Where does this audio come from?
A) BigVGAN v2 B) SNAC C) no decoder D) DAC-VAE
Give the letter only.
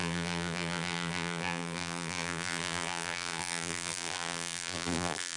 A